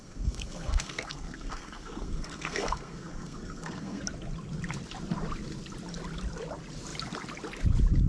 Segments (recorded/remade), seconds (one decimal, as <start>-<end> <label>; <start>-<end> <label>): 0.0-4.0 remade; 4.0-8.1 recorded